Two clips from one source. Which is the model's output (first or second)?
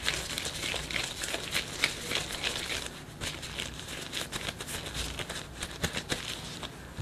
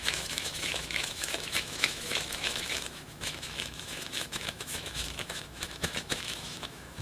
second